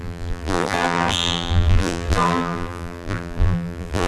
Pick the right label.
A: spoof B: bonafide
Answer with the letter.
A